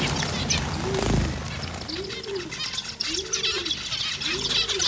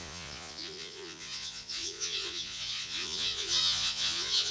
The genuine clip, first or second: first